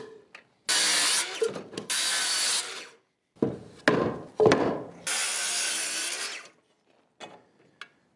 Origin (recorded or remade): recorded